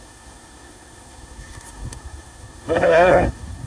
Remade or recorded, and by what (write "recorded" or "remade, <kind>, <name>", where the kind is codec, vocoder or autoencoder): remade, codec, SNAC